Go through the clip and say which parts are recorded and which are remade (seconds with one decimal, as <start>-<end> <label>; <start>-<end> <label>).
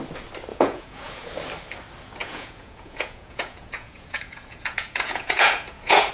0.0-0.5 recorded; 0.5-1.3 remade; 1.3-2.2 recorded; 2.2-6.1 remade